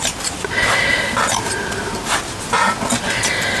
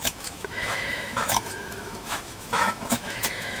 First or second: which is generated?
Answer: second